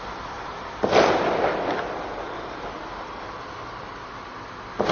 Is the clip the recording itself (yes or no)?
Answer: yes